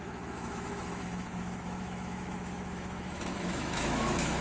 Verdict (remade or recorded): remade